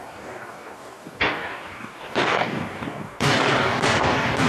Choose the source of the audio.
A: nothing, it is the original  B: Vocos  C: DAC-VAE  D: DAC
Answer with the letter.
D